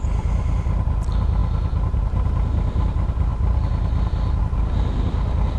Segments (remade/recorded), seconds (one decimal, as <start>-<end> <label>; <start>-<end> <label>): 0.0-5.6 recorded